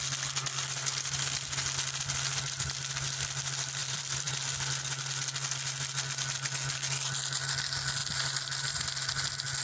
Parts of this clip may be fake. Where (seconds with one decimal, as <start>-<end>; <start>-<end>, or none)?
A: 3.8-4.3; 8.0-8.8